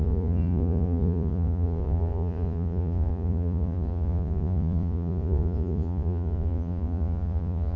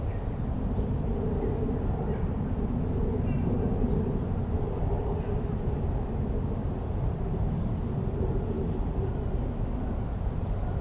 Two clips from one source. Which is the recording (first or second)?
second